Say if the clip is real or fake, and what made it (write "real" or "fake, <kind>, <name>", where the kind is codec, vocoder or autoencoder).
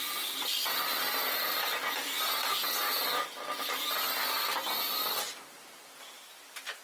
real